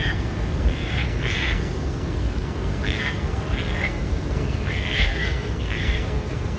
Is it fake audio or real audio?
fake